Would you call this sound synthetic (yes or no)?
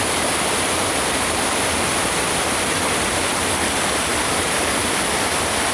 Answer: no